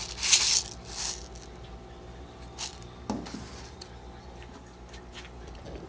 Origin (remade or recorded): recorded